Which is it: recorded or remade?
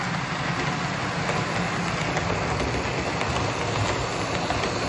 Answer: recorded